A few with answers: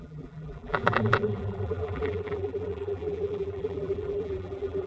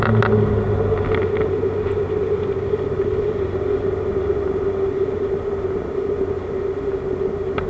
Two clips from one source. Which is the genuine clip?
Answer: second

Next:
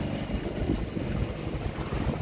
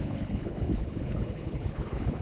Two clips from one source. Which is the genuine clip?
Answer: first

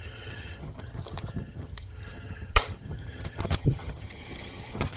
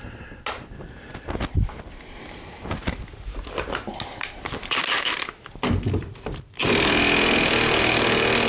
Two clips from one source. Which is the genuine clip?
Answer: second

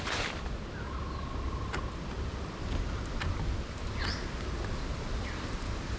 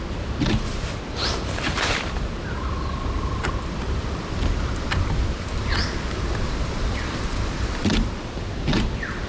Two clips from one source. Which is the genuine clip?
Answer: first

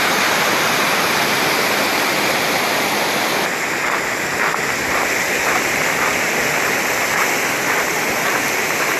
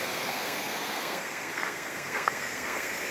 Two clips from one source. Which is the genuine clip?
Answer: first